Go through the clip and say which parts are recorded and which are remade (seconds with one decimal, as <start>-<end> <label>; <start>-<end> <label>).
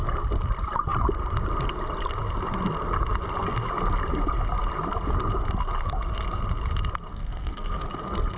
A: 0.0-7.1 recorded; 7.1-7.9 remade; 7.9-8.4 recorded